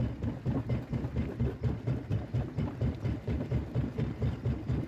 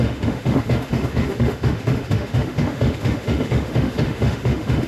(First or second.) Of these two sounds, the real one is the first